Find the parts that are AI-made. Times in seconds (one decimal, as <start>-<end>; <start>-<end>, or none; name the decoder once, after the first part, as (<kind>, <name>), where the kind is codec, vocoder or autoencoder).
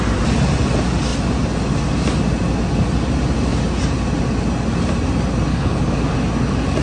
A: 5.5-6.0 (codec, HILCodec)